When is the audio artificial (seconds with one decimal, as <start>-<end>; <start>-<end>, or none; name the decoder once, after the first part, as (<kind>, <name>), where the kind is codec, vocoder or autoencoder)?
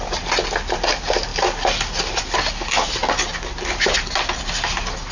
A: none